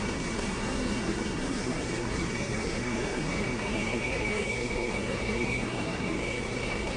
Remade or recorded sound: remade